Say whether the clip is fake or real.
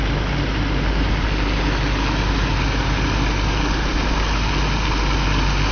real